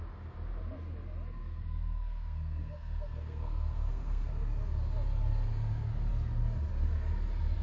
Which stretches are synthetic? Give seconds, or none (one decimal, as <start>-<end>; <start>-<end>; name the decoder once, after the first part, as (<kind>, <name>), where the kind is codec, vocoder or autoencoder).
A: 1.4-4.3 (codec, SNAC)